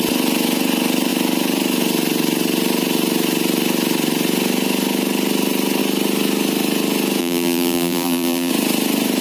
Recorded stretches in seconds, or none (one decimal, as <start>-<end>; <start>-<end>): 0.0-7.2; 8.5-9.2